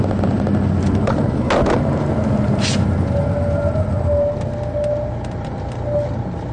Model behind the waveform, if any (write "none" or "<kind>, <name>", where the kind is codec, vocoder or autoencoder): none